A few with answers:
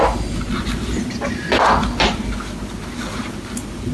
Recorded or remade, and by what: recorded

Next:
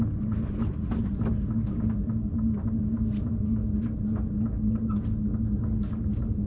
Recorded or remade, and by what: recorded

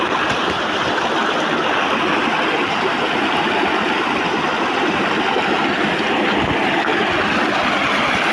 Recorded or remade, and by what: recorded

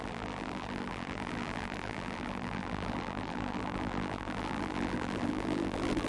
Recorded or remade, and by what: remade, vocoder, BigVGAN v2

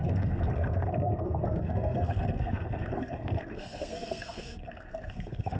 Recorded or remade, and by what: remade, codec, SNAC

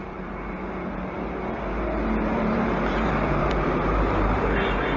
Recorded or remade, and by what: remade, vocoder, BigVGAN v2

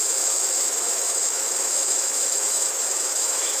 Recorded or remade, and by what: remade, autoencoder, DAC-VAE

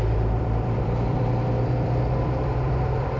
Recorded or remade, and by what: remade, vocoder, BigVGAN v2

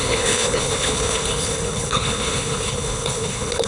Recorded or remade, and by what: remade, codec, HILCodec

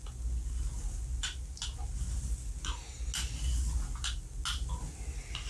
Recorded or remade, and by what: recorded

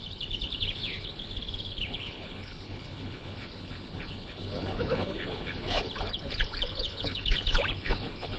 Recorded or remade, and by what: remade, codec, HILCodec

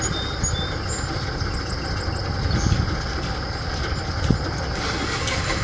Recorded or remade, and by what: recorded